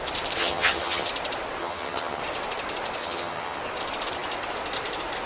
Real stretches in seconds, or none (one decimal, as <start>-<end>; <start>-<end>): 0.0-0.4; 1.1-1.6; 2.2-3.0; 3.6-5.3